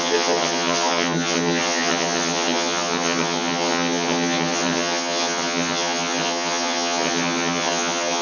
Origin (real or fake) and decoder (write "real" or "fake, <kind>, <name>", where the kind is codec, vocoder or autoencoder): fake, vocoder, HiFi-GAN